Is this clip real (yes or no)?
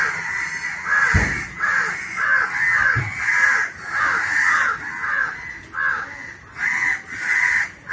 yes